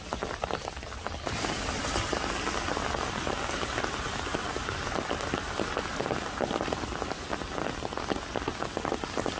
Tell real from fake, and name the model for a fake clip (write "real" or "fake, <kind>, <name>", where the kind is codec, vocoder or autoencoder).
real